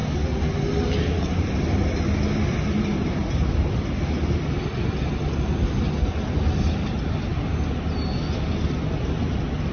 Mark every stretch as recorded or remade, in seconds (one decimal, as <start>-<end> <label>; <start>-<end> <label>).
0.0-9.7 recorded